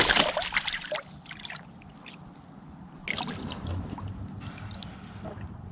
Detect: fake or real real